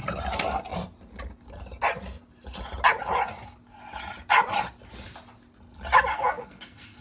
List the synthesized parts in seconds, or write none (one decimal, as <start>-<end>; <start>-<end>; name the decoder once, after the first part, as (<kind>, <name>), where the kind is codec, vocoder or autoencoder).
6.1-7.0 (codec, SNAC)